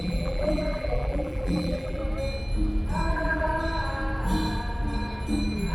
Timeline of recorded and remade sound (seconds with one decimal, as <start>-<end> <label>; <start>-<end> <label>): 0.0-2.0 remade; 2.0-3.1 recorded; 3.1-3.5 remade; 3.5-5.7 recorded